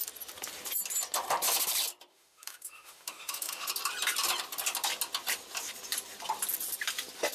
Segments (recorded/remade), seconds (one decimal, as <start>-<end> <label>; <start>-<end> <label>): 0.0-2.1 recorded; 2.1-3.7 remade; 3.7-7.3 recorded